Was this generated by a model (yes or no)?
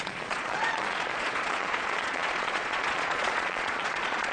yes